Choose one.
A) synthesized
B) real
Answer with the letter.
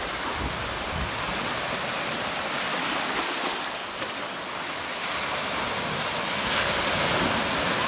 B